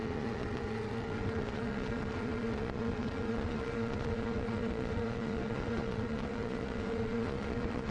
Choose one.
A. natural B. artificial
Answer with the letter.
B